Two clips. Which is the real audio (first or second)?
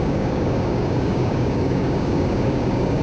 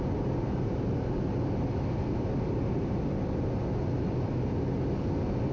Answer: second